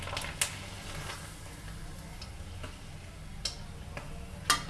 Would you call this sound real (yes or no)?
yes